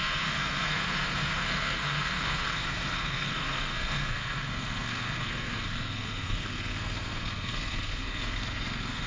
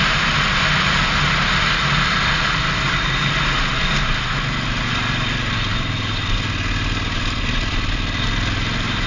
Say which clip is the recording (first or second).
second